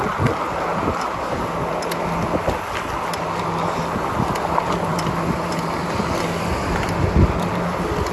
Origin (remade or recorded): recorded